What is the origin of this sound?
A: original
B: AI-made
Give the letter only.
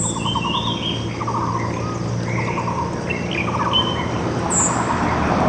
A